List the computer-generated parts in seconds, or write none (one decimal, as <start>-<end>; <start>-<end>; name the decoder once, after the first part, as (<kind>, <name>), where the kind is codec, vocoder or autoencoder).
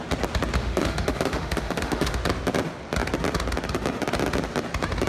0.6-2.2 (autoencoder, DAC-VAE)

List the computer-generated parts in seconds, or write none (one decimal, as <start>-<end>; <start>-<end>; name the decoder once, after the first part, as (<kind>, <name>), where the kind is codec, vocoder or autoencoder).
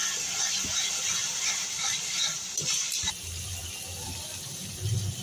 0.9-5.2 (vocoder, BigVGAN v2)